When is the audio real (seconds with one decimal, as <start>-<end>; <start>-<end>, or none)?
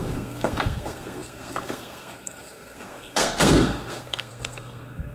none